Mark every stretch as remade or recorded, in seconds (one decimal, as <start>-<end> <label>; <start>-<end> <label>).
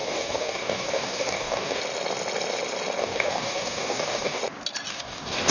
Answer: 0.0-1.8 remade; 1.8-3.0 recorded; 3.0-4.4 remade; 4.4-4.9 recorded; 4.9-5.5 remade